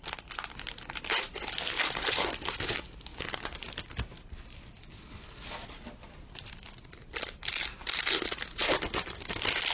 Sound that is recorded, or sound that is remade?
recorded